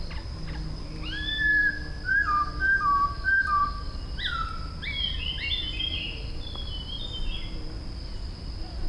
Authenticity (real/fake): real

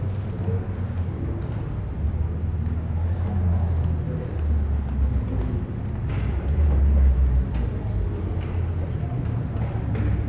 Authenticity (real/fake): real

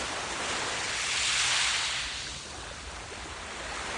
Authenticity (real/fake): real